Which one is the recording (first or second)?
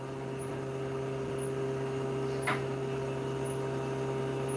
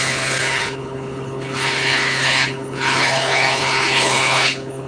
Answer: first